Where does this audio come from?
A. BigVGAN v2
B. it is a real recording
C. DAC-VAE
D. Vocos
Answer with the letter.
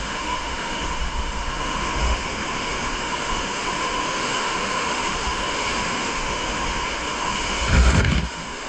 C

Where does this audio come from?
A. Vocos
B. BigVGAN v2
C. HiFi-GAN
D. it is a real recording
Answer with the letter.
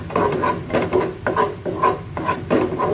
D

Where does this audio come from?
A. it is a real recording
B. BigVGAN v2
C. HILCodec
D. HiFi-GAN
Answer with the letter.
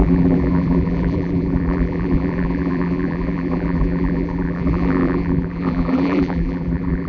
B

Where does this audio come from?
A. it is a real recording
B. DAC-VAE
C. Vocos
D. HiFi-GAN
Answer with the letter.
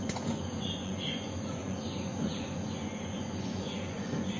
C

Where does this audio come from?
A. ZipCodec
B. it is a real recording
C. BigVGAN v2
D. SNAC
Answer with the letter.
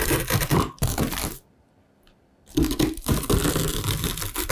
C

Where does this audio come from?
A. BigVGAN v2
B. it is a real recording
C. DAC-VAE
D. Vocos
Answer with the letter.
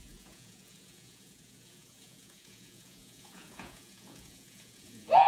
D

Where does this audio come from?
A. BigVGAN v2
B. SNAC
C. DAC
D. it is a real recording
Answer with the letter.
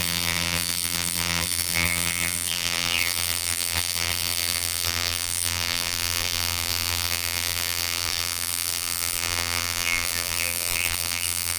A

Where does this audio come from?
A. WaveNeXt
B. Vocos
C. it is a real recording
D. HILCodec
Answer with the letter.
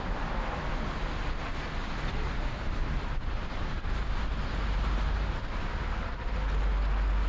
C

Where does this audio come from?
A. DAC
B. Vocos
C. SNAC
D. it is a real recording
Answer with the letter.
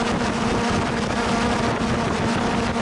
D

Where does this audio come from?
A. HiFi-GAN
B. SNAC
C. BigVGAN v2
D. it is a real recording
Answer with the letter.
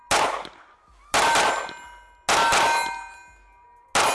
D